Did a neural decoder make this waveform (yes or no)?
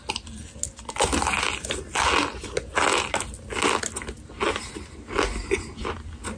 no